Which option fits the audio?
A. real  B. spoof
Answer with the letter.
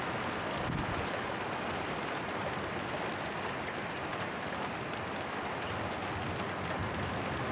A